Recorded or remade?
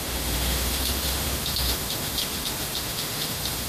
remade